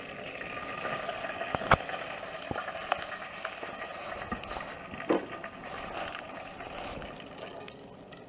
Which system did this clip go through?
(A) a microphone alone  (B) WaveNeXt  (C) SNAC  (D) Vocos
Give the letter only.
A